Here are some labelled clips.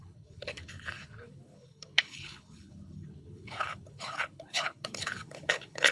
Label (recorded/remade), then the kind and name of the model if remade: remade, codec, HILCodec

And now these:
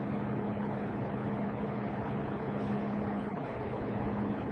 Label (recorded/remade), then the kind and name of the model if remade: remade, codec, HILCodec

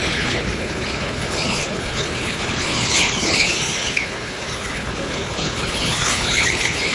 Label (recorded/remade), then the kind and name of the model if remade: remade, codec, HILCodec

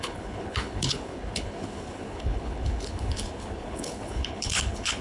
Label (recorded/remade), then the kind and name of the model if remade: remade, codec, HILCodec